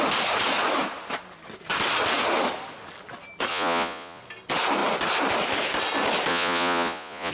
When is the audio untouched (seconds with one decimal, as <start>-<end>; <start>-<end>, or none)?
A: 0.0-3.5; 4.2-6.3